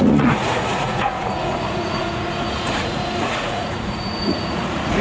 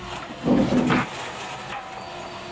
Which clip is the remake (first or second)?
first